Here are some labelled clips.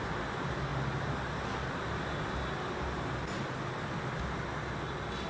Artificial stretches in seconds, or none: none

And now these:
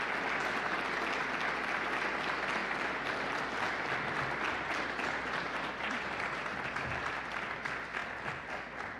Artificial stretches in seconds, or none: 2.6-6.3 (vocoder, BigVGAN v2); 8.0-8.5